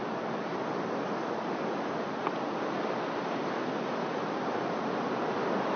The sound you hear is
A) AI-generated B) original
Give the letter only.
B